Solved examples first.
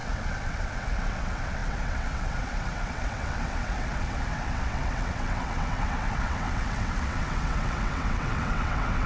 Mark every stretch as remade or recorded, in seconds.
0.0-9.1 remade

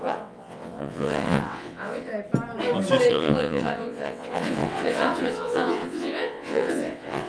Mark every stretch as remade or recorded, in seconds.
0.0-2.1 remade; 2.1-3.1 recorded; 3.1-7.3 remade

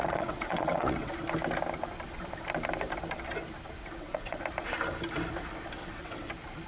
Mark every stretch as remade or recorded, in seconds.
0.0-1.1 remade; 1.1-3.8 recorded; 3.8-4.4 remade; 4.4-5.8 recorded; 5.8-6.3 remade; 6.3-6.7 recorded